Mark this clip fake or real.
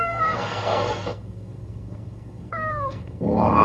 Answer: fake